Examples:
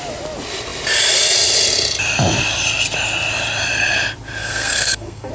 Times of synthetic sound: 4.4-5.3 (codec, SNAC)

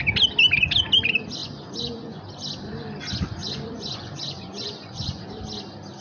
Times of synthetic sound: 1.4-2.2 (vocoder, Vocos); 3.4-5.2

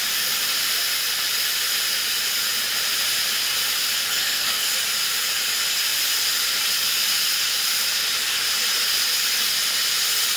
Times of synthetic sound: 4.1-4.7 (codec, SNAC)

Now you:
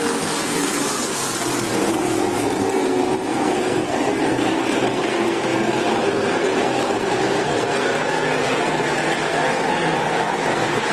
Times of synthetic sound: 0.0-1.2 (codec, SNAC); 1.9-10.9

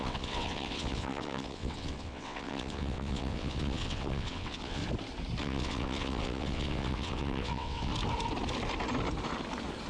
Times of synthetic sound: 0.0-4.8 (vocoder, WaveNeXt); 5.4-7.9

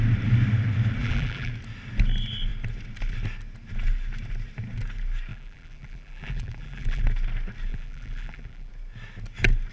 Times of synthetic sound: 1.0-1.5 (vocoder, BigVGAN v2); 5.3-7.0; 7.7-8.7